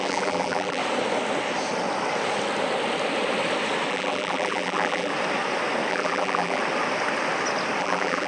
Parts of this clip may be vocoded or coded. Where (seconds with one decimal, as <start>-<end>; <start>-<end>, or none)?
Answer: 0.0-0.8; 3.9-5.1; 5.9-6.6; 7.8-8.3